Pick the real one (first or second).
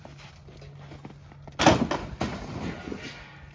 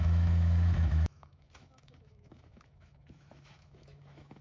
first